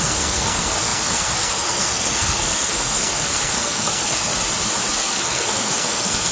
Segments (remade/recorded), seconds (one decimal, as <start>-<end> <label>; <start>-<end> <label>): 0.0-4.3 remade; 4.3-4.9 recorded; 4.9-6.3 remade